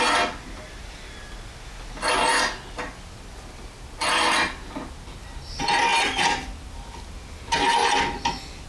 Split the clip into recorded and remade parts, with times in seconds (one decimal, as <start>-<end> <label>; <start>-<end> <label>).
0.0-8.7 recorded